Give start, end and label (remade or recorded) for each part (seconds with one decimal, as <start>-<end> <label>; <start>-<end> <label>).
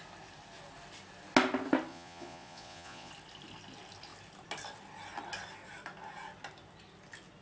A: 0.0-1.9 recorded; 1.9-3.1 remade; 3.1-7.4 recorded